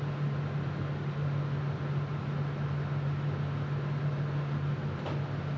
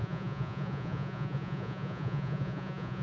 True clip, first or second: first